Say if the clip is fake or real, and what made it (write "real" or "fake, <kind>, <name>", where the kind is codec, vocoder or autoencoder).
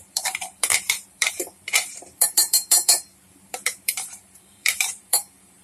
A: fake, vocoder, BigVGAN v2